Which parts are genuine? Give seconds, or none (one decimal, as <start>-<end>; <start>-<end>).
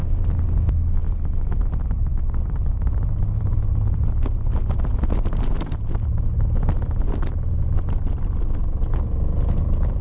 0.0-10.0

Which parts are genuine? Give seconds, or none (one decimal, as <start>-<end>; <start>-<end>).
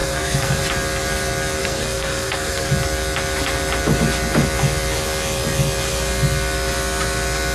0.6-1.6; 2.7-7.5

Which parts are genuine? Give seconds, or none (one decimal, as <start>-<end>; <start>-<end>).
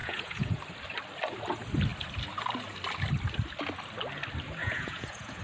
0.6-4.6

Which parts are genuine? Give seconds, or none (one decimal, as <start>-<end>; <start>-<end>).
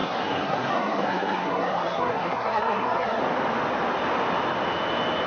3.2-5.3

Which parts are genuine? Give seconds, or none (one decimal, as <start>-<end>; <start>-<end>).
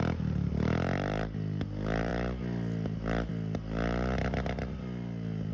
0.0-5.5